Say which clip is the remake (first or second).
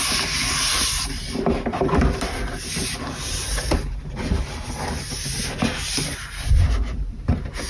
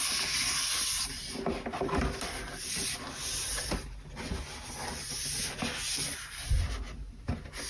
first